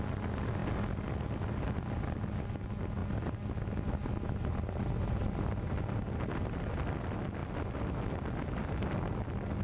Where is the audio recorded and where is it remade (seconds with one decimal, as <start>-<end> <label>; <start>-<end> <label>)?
0.0-9.6 recorded

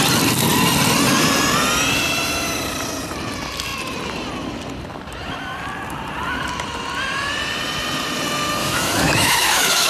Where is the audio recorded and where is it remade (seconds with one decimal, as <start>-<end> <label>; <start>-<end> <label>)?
0.0-8.6 recorded; 8.6-9.9 remade

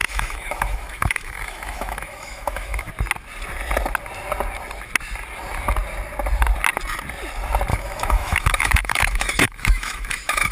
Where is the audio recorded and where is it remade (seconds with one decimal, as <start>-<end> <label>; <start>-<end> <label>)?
0.0-2.9 remade; 2.9-7.7 recorded; 7.7-10.5 remade

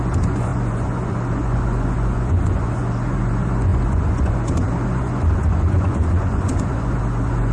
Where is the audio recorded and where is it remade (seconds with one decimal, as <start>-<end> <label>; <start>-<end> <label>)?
0.0-7.5 remade

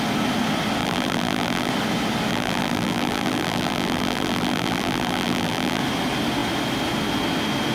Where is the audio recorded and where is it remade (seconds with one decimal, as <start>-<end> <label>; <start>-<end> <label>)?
0.0-0.8 recorded; 0.8-1.7 remade; 1.7-2.3 recorded; 2.3-5.8 remade; 5.8-7.7 recorded

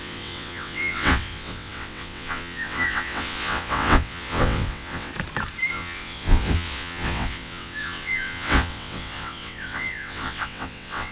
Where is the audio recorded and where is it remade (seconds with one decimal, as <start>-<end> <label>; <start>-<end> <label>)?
0.0-5.1 remade; 5.1-5.7 recorded; 5.7-11.1 remade

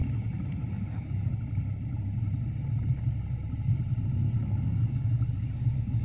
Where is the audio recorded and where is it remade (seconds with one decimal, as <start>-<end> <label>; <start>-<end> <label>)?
0.0-0.7 recorded; 0.7-1.3 remade; 1.3-4.4 recorded; 4.4-6.0 remade

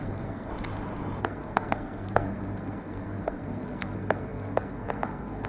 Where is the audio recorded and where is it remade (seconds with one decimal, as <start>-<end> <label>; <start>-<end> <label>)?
0.0-0.5 remade; 0.5-1.2 recorded; 1.2-5.5 remade